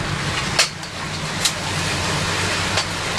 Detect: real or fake real